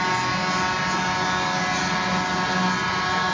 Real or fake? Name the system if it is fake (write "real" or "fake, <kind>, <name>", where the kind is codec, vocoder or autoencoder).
real